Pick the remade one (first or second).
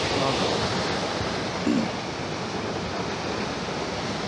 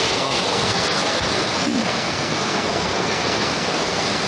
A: second